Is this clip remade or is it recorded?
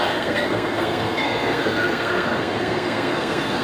remade